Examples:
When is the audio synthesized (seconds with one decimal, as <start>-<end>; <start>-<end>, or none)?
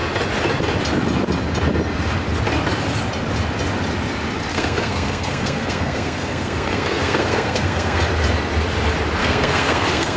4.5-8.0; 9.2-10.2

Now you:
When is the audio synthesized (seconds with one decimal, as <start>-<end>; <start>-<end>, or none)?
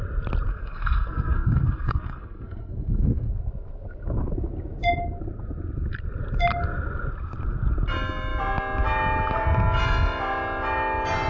0.5-3.3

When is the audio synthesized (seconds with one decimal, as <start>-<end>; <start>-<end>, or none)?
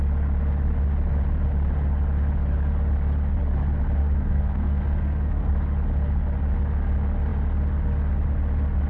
4.0-5.5